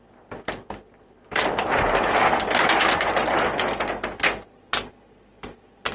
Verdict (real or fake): real